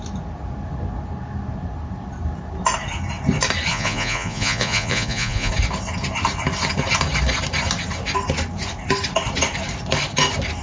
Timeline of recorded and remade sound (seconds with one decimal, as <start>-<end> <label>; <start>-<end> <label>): 0.0-3.7 recorded; 3.7-5.5 remade; 5.5-10.6 recorded